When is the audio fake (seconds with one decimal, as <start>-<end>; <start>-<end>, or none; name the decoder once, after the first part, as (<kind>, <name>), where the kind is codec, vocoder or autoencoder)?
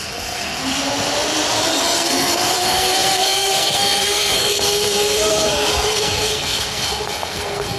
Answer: 0.0-0.6 (codec, SNAC); 1.7-7.8